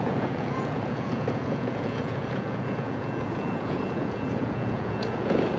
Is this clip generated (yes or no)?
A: yes